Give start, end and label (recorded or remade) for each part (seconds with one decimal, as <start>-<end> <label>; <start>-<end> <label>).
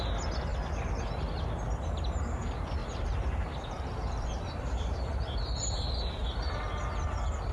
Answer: 0.0-2.8 recorded; 2.8-6.6 remade; 6.6-7.5 recorded